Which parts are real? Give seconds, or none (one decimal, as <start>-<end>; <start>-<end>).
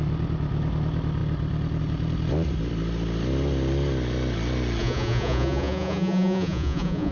0.0-4.8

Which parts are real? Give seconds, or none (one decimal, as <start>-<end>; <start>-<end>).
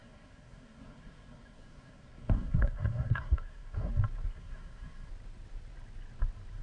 3.9-4.3; 5.1-6.6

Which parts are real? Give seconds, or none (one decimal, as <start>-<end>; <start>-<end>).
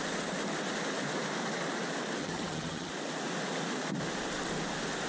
0.0-2.2; 2.9-5.1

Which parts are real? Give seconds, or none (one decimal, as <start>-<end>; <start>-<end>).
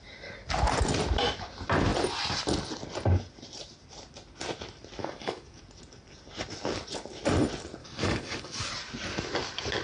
0.0-5.0; 5.6-7.8; 8.7-9.8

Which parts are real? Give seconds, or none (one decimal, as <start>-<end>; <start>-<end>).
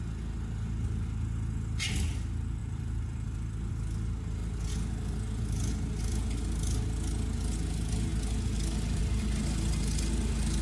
0.0-10.6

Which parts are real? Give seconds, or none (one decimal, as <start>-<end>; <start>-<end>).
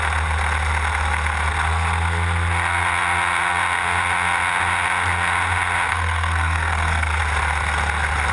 0.0-5.9; 7.2-8.3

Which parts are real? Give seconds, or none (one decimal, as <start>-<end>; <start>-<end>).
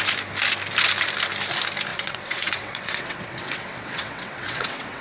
0.0-1.9